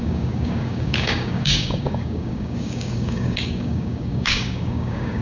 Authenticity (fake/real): fake